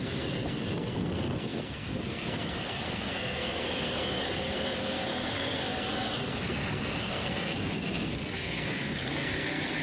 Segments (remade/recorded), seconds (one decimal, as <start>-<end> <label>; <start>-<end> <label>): 0.0-9.8 remade